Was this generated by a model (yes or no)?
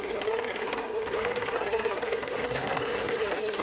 yes